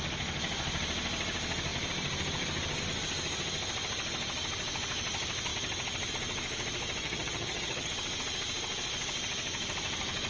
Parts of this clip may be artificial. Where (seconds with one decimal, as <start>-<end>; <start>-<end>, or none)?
7.0-7.9